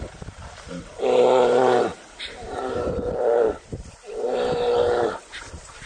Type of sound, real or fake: fake